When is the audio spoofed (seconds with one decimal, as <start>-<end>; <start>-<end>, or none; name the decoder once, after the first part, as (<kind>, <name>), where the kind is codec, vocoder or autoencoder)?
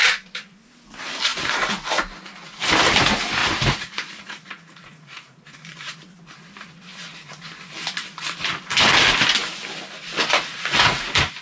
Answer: 3.4-5.4 (vocoder, Vocos); 10.5-11.0